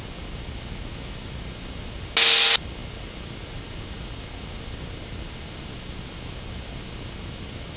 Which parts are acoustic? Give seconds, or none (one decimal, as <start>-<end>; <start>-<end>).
0.0-7.8